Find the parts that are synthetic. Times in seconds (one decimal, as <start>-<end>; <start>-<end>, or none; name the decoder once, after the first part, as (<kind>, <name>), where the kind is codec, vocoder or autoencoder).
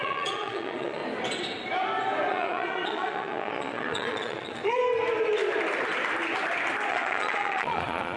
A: 0.0-1.0 (vocoder, Vocos); 2.3-4.8; 6.9-8.2